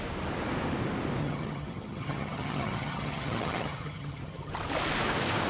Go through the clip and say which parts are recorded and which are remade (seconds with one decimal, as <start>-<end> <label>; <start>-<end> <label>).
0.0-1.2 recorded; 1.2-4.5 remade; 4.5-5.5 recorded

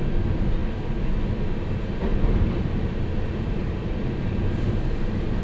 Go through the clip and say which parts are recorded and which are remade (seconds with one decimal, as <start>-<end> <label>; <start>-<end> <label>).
0.0-2.1 recorded; 2.1-5.4 remade

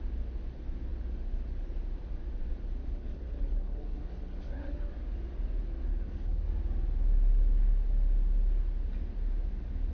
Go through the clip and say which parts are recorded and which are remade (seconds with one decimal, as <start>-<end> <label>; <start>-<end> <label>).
0.0-2.8 recorded; 2.8-4.9 remade; 4.9-5.9 recorded; 5.9-6.5 remade; 6.5-9.9 recorded